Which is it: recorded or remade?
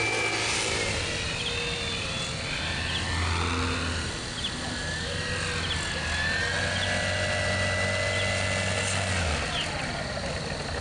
recorded